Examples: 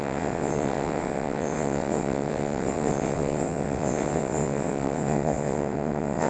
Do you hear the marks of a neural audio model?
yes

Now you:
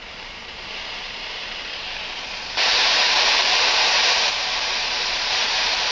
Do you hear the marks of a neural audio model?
yes